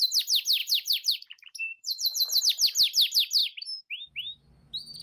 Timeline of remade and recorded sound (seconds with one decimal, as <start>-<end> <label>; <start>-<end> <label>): 0.0-0.6 recorded; 0.6-2.4 remade; 2.4-5.0 recorded